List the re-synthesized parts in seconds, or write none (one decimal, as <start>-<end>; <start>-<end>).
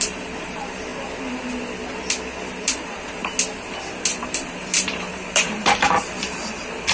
0.0-0.9; 2.6-3.2; 4.2-6.9